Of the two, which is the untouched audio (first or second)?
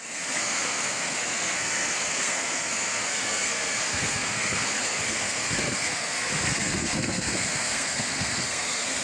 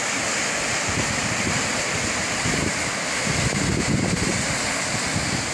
second